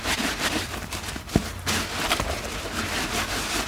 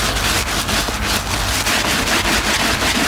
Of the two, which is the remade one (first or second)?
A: first